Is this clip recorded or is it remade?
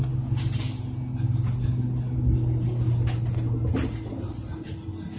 recorded